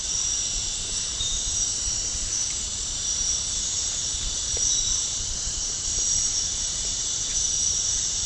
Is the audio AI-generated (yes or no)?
yes